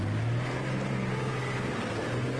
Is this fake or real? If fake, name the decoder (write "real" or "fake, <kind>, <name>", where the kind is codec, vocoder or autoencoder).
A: real